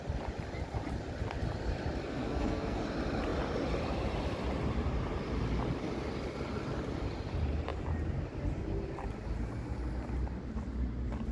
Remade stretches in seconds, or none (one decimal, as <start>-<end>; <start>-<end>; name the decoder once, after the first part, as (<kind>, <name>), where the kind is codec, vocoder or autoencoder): 2.1-2.8 (codec, SNAC)